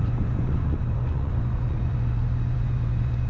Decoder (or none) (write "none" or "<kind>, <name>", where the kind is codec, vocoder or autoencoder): vocoder, Vocos